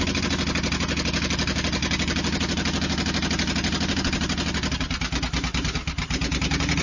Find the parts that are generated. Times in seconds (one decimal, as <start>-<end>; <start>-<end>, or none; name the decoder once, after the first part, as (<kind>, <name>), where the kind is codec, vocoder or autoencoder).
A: none